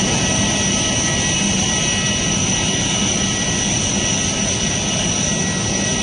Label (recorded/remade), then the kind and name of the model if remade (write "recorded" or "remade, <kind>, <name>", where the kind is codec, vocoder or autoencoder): recorded